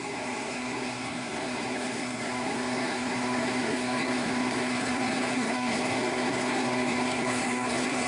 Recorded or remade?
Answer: remade